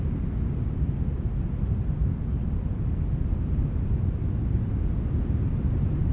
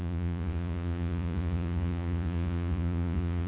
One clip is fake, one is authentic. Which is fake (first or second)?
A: second